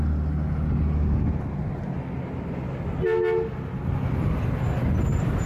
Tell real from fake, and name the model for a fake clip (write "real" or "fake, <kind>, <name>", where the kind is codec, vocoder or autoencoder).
real